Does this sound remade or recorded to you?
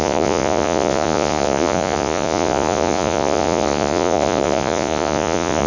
remade